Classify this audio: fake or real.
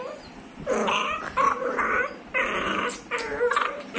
real